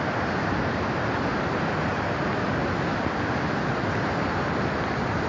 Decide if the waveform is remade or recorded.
recorded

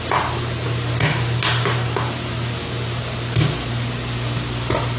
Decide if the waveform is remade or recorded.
recorded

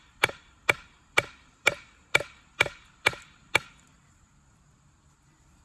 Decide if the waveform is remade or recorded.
remade